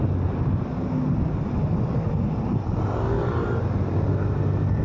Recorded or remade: recorded